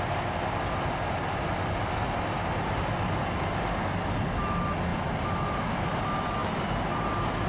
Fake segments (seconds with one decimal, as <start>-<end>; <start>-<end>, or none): 4.9-6.0; 6.4-7.1